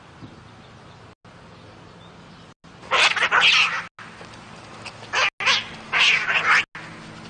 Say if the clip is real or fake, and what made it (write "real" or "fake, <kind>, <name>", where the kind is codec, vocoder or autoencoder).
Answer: real